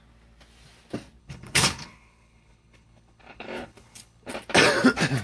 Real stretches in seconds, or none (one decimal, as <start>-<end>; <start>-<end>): 0.0-1.2; 4.3-5.2